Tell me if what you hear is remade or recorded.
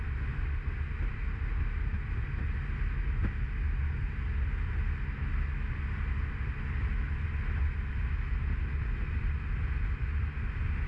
recorded